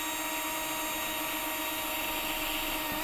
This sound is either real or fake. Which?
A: real